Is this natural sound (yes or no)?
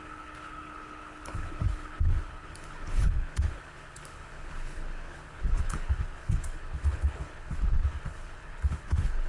no